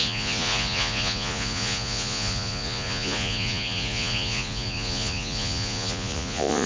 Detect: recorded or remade remade